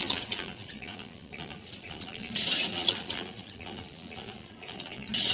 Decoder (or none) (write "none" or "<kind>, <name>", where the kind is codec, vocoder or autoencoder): vocoder, Vocos